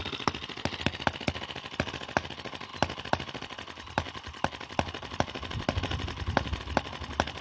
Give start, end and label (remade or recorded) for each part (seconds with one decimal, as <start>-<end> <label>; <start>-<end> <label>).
0.0-7.4 recorded